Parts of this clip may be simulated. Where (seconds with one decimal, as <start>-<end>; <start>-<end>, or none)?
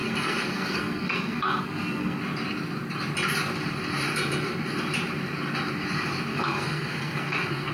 0.0-2.2; 6.3-7.7